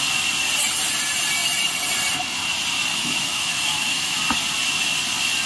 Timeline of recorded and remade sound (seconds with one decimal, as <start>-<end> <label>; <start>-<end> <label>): 0.0-2.9 recorded; 2.9-4.2 remade; 4.2-5.5 recorded